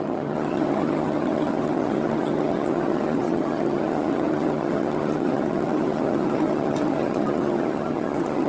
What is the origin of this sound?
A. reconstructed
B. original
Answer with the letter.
A